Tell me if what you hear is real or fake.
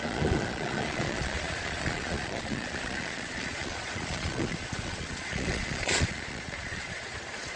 fake